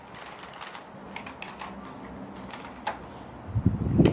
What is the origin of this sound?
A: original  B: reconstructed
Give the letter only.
A